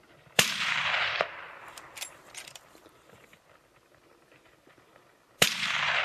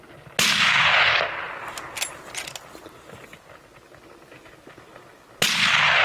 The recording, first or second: second